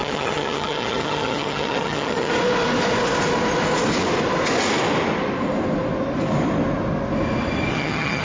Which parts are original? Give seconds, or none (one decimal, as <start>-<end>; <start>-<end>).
2.3-7.7